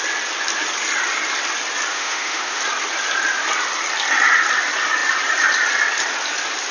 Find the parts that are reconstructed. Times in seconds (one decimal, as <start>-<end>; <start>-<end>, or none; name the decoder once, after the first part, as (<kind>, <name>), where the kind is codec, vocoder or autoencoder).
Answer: 1.9-2.6 (autoencoder, DAC-VAE)